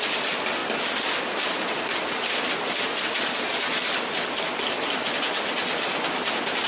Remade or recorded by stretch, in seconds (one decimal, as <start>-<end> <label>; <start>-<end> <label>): 0.0-6.7 recorded